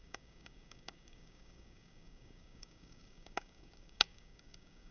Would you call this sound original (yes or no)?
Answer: no